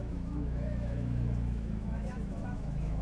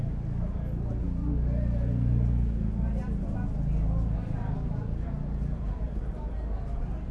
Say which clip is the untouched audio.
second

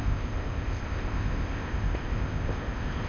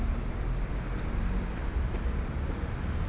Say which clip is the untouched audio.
second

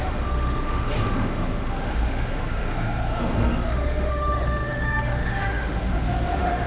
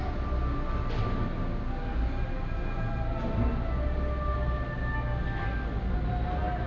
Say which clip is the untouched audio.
second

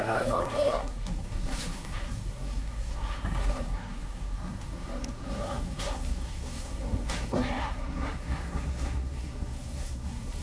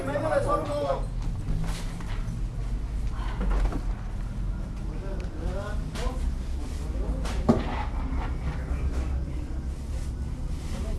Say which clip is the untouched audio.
second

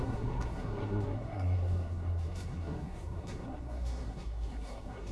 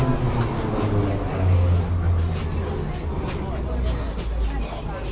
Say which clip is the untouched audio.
second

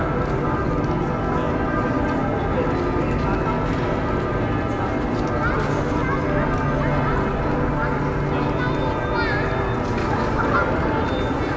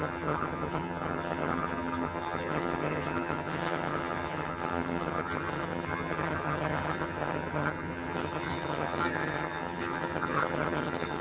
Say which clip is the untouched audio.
first